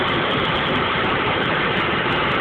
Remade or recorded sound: remade